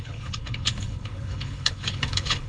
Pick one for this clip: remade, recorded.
remade